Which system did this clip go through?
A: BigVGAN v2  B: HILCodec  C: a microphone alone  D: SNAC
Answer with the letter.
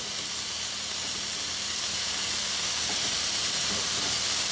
C